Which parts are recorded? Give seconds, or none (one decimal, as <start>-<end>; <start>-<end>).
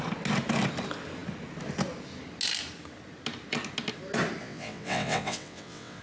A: 0.0-4.4